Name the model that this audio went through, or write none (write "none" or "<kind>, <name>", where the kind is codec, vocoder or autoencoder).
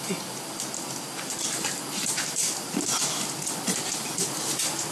none